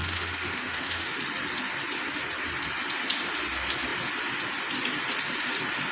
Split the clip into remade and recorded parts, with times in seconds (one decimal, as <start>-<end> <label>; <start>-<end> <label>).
0.0-1.2 remade; 1.2-5.9 recorded